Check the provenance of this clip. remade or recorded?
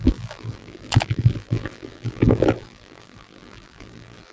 remade